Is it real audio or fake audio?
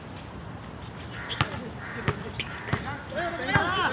real